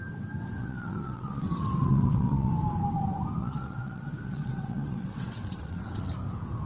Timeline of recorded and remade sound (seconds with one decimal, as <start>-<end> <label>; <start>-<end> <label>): 0.0-0.6 recorded; 0.6-2.5 remade; 2.5-3.4 recorded; 3.4-6.0 remade; 6.0-6.7 recorded